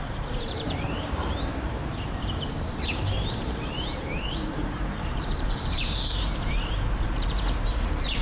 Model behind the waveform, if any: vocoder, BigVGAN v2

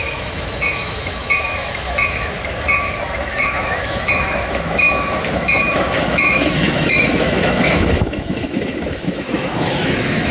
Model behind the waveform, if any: autoencoder, DAC-VAE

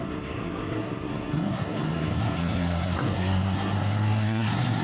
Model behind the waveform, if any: codec, SNAC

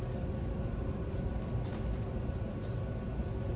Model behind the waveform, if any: none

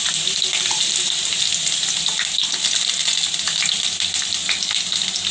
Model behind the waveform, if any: none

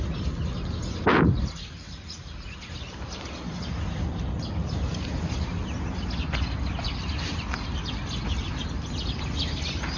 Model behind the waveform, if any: none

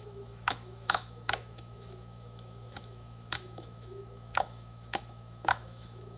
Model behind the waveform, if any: autoencoder, DAC-VAE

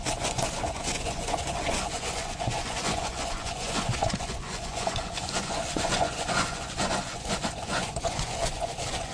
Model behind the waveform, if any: vocoder, Vocos